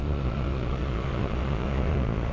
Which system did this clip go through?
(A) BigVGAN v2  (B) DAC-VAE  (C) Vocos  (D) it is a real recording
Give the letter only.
C